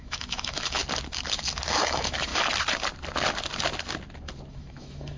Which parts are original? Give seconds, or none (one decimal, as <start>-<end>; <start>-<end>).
0.8-1.8; 2.3-4.5